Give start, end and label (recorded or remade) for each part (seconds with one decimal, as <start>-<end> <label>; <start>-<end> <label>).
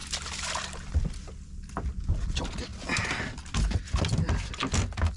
0.0-5.2 recorded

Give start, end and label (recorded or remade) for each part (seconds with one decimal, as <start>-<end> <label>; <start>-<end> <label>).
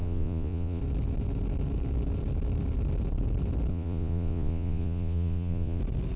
0.0-0.8 remade; 0.8-3.7 recorded; 3.7-5.8 remade; 5.8-6.2 recorded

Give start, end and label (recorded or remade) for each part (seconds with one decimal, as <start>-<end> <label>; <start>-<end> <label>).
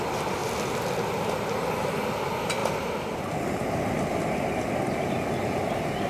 0.0-2.6 recorded; 2.6-3.4 remade; 3.4-6.1 recorded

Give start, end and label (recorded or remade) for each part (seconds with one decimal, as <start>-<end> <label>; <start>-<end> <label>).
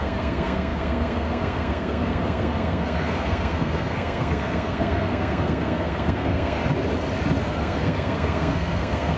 0.0-6.6 remade; 6.6-7.4 recorded; 7.4-9.2 remade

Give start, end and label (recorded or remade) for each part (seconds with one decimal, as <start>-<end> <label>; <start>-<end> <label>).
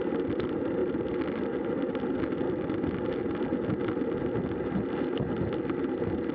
0.0-6.3 recorded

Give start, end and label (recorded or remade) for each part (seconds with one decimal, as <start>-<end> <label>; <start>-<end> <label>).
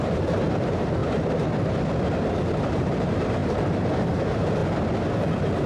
0.0-1.0 remade; 1.0-2.3 recorded; 2.3-4.6 remade; 4.6-5.7 recorded